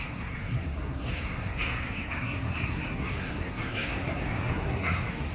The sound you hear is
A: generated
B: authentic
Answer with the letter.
A